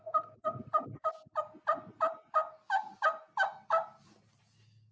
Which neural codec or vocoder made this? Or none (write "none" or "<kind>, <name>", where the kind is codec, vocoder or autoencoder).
none